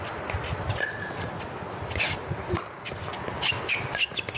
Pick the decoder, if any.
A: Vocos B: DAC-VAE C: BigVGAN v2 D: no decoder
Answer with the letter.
D